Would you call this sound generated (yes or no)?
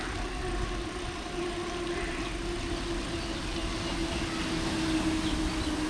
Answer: no